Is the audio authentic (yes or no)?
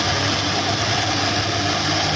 yes